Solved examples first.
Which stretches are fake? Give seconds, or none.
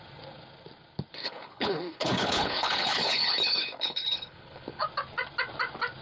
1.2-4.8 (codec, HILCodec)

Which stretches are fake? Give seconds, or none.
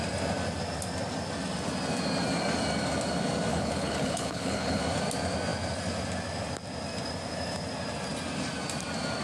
3.5-4.8 (codec, HILCodec)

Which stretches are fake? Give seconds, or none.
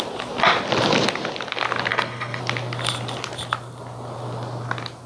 1.9-2.4 (codec, HILCodec)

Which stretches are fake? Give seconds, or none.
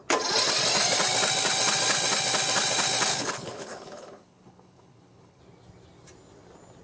3.1-5.4 (codec, HILCodec)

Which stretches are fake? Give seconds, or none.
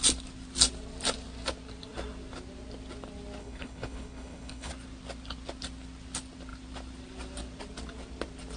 3.4-4.7 (codec, HILCodec)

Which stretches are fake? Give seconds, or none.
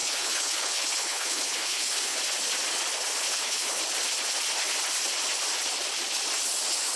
0.0-2.2 (codec, HILCodec); 3.2-3.8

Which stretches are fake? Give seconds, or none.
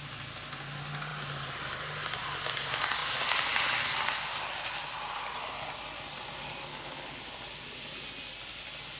6.7-7.2 (codec, HILCodec)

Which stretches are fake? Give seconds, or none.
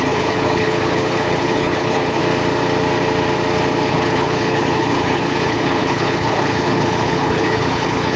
0.0-2.2 (codec, HILCodec); 3.9-8.2